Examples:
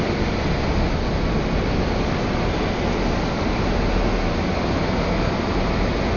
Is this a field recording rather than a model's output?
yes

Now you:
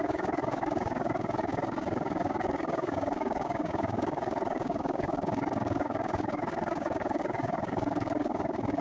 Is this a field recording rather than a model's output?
no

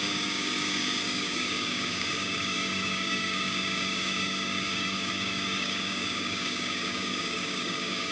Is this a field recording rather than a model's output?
no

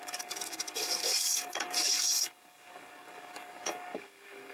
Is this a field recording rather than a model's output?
no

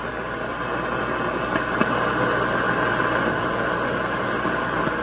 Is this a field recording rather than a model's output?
yes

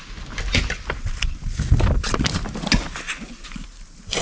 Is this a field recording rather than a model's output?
yes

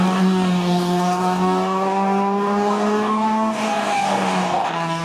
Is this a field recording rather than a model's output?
no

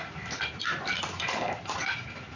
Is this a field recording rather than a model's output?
yes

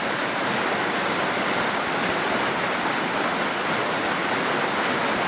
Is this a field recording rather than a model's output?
yes